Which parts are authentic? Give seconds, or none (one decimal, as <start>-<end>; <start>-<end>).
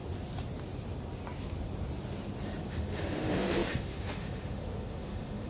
0.0-2.7